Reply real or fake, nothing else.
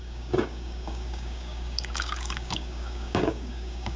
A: fake